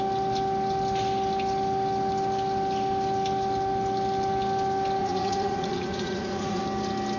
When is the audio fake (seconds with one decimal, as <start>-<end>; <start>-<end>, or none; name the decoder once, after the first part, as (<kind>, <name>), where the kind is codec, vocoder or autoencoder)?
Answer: 5.0-6.6 (vocoder, Vocos)